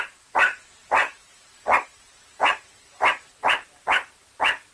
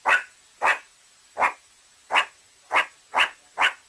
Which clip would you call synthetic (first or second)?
first